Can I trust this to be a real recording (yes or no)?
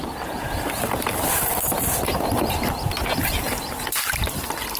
no